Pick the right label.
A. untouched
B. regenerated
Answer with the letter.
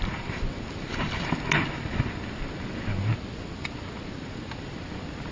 A